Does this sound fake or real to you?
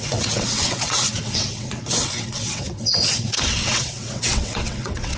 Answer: fake